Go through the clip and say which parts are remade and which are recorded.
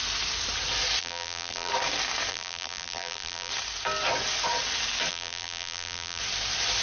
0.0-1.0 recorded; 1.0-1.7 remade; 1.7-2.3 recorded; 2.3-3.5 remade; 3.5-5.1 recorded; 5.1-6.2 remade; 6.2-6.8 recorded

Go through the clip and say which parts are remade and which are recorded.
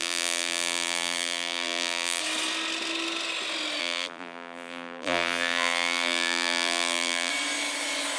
0.0-2.2 remade; 2.2-3.8 recorded; 3.8-7.3 remade; 7.3-8.2 recorded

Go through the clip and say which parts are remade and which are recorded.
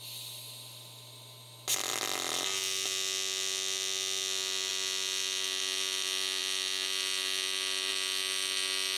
0.0-9.0 recorded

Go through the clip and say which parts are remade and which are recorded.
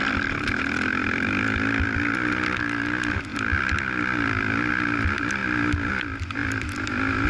0.0-1.0 recorded; 1.0-2.3 remade; 2.3-3.3 recorded; 3.3-4.7 remade; 4.7-6.4 recorded; 6.4-7.3 remade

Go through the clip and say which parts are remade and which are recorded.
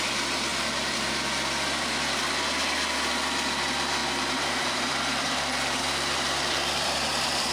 0.0-0.5 recorded; 0.5-1.1 remade; 1.1-4.0 recorded; 4.0-7.5 remade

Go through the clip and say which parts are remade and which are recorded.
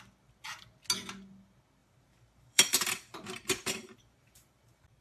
0.0-1.8 recorded; 1.8-5.0 remade